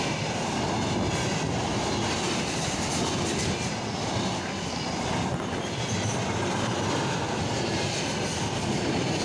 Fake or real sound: real